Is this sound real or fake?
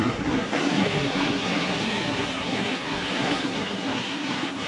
fake